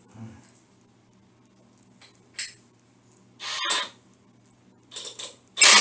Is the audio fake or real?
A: real